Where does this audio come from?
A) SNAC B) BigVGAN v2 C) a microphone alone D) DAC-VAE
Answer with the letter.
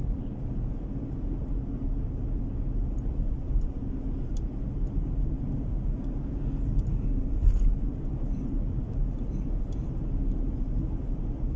C